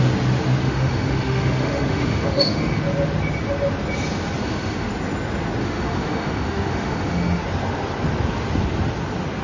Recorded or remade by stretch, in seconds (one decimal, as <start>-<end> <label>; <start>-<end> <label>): 0.0-0.6 recorded; 0.6-2.8 remade; 2.8-4.4 recorded; 4.4-4.9 remade; 4.9-5.6 recorded; 5.6-7.4 remade; 7.4-9.4 recorded